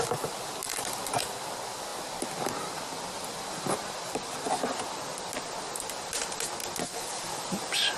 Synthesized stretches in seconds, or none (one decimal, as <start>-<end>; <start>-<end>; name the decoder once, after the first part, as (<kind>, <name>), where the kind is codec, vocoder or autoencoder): none